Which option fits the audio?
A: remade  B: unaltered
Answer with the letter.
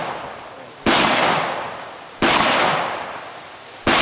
B